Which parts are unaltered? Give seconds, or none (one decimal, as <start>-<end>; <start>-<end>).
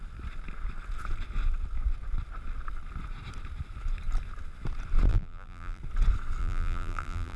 0.0-5.1; 5.8-6.4